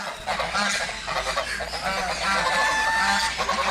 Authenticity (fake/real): real